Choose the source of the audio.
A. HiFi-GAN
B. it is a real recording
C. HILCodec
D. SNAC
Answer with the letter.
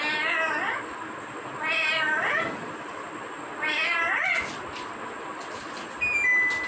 B